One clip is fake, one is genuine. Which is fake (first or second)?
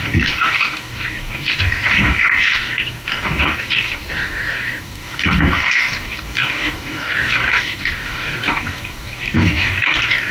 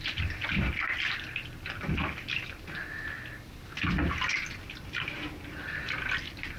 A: first